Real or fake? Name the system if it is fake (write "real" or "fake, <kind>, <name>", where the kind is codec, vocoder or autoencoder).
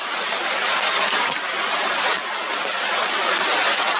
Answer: real